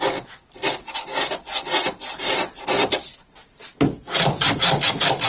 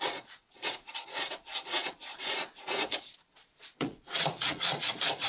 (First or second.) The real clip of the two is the first